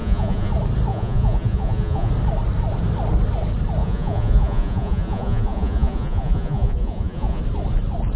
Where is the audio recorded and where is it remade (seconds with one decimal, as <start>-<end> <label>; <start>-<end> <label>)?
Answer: 0.0-0.5 remade; 0.5-0.9 recorded; 0.9-2.1 remade; 2.1-3.8 recorded; 3.8-7.4 remade; 7.4-8.2 recorded